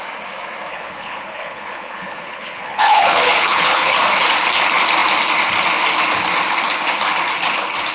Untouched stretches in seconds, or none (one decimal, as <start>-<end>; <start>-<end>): 0.0-0.7; 4.0-7.9